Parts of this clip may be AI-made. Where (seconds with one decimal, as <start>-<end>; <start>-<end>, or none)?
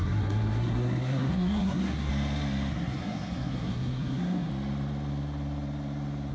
0.0-2.1; 2.7-4.5